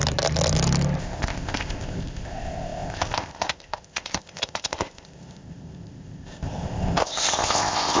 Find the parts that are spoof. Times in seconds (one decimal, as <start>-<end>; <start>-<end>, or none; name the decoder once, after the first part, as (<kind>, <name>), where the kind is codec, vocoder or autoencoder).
1.0-8.0 (codec, ZipCodec)